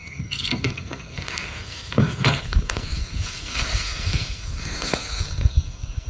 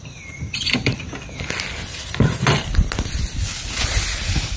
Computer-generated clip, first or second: first